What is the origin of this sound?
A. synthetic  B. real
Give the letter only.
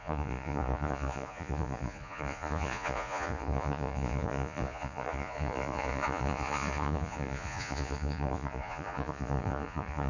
A